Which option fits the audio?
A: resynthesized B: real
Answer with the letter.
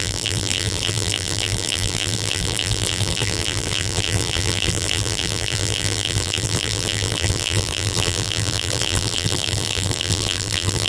A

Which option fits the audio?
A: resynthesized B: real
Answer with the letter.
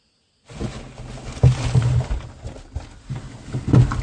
B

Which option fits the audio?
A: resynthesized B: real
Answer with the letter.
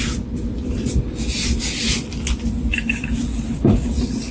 B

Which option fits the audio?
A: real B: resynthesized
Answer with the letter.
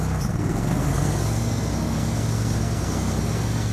B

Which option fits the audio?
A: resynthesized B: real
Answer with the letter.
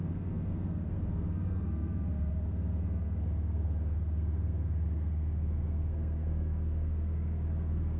A